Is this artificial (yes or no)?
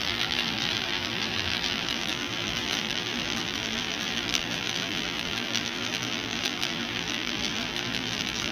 yes